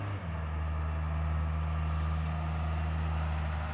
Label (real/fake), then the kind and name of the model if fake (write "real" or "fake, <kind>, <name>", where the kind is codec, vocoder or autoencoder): real